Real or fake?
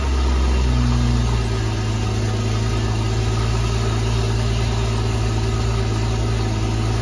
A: real